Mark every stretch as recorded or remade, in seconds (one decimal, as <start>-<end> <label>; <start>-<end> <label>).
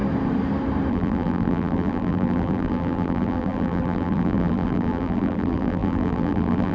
0.0-0.9 recorded; 0.9-6.7 remade